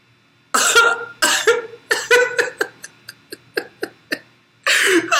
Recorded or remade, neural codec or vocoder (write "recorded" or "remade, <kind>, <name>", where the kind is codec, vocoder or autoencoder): recorded